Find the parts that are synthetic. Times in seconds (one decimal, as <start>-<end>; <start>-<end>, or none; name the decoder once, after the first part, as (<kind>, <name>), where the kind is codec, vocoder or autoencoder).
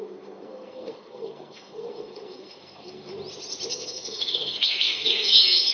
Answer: 0.0-3.1 (codec, SNAC); 3.7-5.7